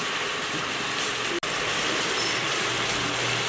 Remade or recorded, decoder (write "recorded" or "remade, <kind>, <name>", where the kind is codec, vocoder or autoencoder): recorded